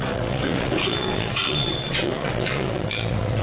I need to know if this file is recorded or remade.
remade